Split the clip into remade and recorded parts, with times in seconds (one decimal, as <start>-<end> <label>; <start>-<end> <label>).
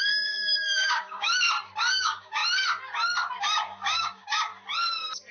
0.0-1.3 remade; 1.3-1.9 recorded; 1.9-2.4 remade; 2.4-3.4 recorded; 3.4-4.5 remade; 4.5-5.3 recorded